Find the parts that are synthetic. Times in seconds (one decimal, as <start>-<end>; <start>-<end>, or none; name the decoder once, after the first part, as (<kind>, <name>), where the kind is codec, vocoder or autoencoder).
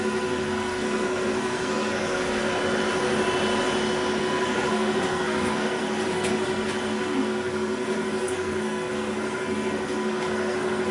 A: 0.0-2.4 (codec, SNAC); 4.2-10.9